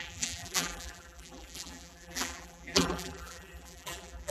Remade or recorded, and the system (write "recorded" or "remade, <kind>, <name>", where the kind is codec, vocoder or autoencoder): remade, vocoder, BigVGAN v2